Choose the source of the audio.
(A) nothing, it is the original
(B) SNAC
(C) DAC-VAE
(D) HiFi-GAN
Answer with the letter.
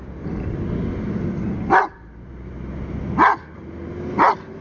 A